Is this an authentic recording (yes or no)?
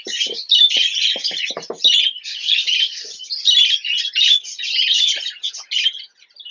yes